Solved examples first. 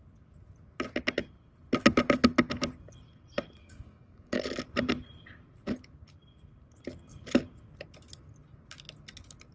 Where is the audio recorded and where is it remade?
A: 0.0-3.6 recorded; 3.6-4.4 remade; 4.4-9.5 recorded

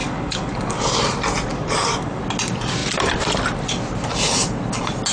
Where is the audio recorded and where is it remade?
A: 0.0-1.0 remade; 1.0-1.5 recorded; 1.5-2.2 remade; 2.2-5.1 recorded

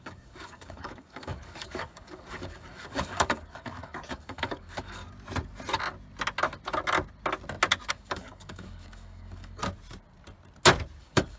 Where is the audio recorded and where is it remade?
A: 0.0-5.0 remade; 5.0-7.9 recorded; 7.9-9.6 remade; 9.6-11.0 recorded; 11.0-11.4 remade

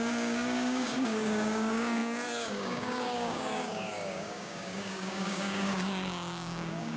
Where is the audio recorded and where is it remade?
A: 0.0-7.0 remade

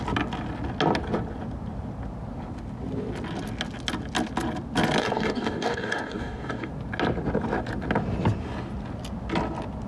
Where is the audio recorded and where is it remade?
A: 0.0-5.0 recorded; 5.0-6.7 remade; 6.7-9.9 recorded

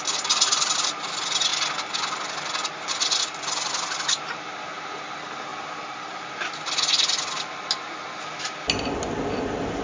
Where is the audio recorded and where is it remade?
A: 0.0-9.8 recorded

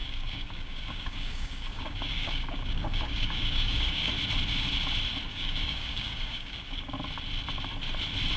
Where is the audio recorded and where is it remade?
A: 0.0-4.1 remade; 4.1-5.3 recorded; 5.3-6.9 remade; 6.9-8.4 recorded